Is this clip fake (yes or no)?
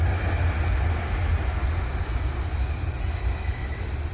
no